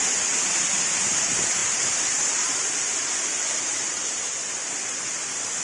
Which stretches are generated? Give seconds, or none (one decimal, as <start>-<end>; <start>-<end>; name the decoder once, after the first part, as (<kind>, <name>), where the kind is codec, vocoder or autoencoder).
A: 1.6-2.7 (vocoder, BigVGAN v2)